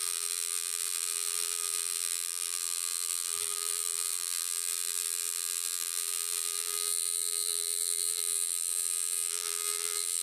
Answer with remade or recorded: remade